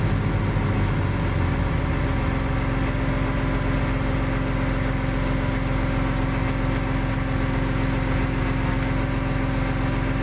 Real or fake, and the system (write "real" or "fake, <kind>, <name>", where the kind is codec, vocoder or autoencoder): real